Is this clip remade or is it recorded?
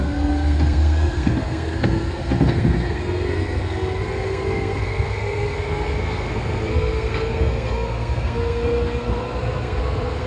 remade